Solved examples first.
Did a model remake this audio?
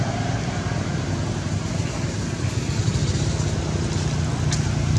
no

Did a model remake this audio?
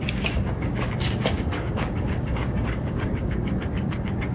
yes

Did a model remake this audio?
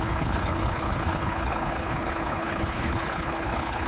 yes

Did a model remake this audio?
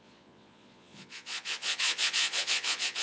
yes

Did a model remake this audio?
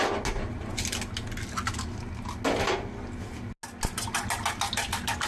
no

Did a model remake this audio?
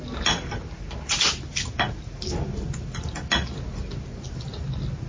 no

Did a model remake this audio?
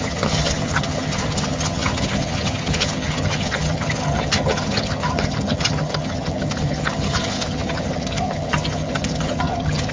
yes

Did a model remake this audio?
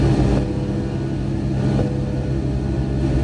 no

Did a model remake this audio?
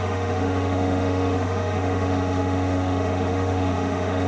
yes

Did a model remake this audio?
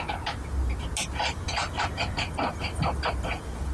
no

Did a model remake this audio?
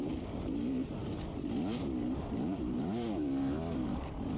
no